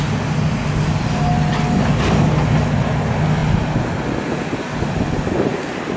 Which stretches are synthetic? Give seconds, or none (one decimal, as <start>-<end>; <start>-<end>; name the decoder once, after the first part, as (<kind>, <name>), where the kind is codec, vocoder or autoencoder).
none